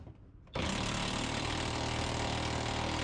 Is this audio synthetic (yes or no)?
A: no